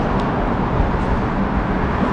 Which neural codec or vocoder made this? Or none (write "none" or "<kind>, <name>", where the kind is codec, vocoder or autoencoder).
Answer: none